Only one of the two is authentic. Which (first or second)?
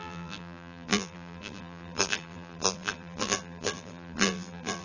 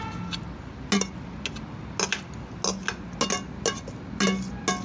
second